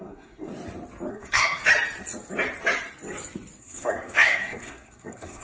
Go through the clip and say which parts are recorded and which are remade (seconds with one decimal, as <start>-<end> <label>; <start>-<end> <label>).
0.0-0.5 remade; 0.5-1.1 recorded; 1.1-1.6 remade; 1.6-3.6 recorded; 3.6-5.4 remade